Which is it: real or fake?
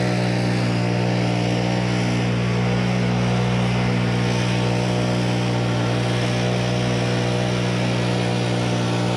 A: real